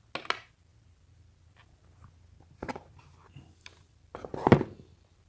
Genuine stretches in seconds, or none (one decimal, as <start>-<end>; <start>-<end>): 0.0-5.3